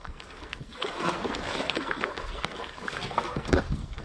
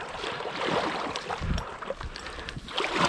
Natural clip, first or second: second